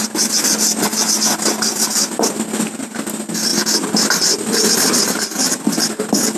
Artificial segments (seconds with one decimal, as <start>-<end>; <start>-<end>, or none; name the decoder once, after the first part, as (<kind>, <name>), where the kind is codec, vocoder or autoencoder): none